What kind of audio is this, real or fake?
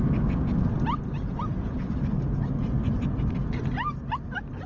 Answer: real